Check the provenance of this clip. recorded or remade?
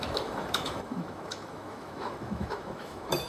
remade